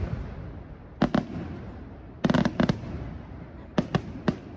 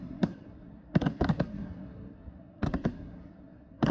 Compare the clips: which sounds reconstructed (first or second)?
second